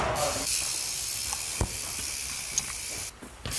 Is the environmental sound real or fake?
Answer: real